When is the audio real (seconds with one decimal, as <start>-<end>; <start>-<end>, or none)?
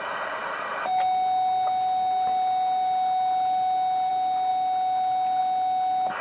0.0-6.2